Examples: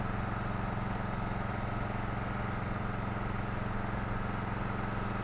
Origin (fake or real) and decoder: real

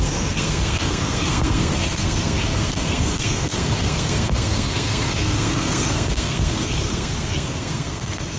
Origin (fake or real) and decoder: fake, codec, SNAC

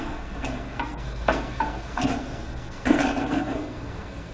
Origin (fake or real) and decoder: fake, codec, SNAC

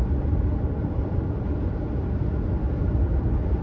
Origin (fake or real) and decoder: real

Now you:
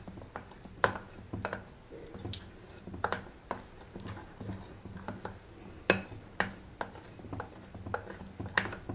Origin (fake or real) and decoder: real